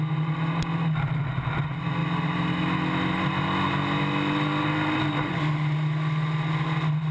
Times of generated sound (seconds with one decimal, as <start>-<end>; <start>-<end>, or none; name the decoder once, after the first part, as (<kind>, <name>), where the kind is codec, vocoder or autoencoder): none